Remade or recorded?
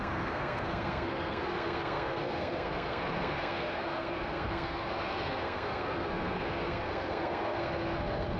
remade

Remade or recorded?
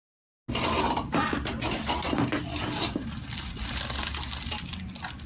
recorded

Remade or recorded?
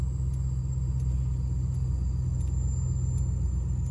recorded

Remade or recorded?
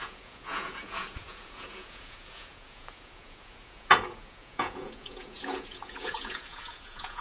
remade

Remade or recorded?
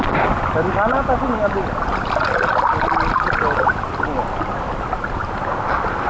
recorded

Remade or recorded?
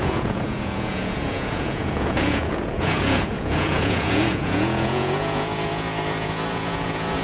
remade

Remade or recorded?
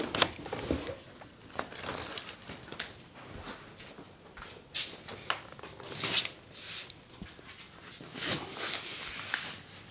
recorded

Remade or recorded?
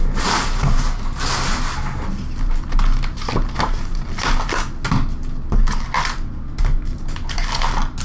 recorded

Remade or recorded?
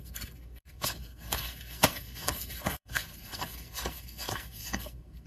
remade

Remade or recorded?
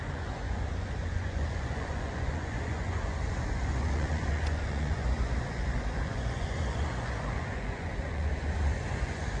remade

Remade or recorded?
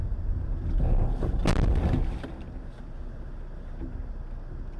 recorded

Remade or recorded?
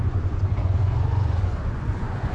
remade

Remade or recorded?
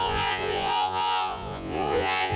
remade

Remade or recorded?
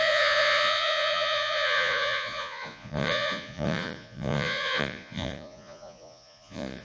remade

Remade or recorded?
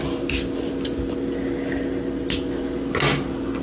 recorded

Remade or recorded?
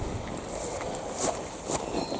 recorded